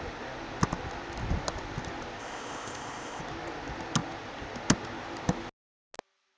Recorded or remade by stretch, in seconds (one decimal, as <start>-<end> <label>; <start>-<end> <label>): 0.0-2.2 recorded; 2.2-3.2 remade; 3.2-6.4 recorded